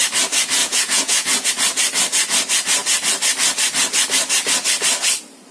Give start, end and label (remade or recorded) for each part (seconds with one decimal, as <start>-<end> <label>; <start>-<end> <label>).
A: 0.0-0.6 recorded; 0.6-1.5 remade; 1.5-5.5 recorded